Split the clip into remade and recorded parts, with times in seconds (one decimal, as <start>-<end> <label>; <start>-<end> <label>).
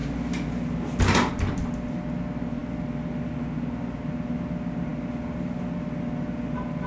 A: 0.0-6.9 recorded